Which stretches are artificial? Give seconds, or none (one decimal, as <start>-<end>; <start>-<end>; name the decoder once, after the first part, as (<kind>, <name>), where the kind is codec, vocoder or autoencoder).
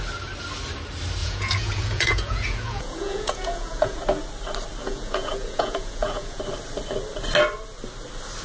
1.2-4.0 (vocoder, Vocos); 4.8-6.4